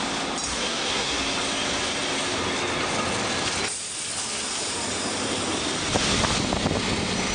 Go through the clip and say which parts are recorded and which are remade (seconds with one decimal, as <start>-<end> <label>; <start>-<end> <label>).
0.0-0.5 recorded; 0.5-1.2 remade; 1.2-7.3 recorded